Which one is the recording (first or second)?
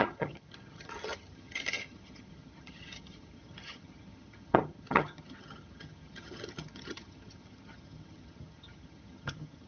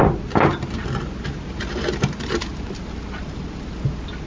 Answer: second